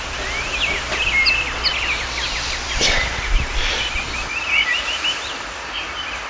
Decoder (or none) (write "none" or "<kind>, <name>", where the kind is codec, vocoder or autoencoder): vocoder, BigVGAN v2